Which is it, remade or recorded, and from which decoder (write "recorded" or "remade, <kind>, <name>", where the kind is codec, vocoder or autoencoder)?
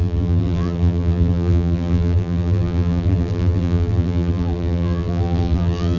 remade, vocoder, BigVGAN v2